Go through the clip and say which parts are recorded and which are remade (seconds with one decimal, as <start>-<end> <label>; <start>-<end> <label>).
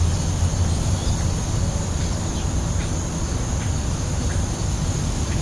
0.0-5.4 recorded